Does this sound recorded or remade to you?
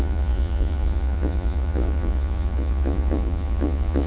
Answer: remade